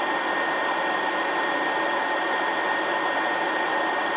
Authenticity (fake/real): real